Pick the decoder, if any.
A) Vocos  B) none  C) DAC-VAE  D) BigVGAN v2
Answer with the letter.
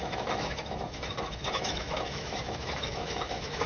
C